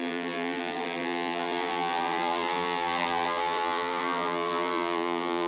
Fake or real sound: fake